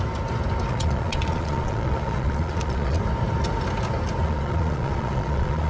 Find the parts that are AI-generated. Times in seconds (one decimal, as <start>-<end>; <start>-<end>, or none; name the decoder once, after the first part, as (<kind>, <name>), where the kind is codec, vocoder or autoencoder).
0.7-3.0 (vocoder, Vocos); 4.2-5.7